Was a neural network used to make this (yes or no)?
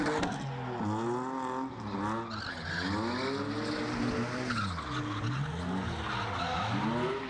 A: no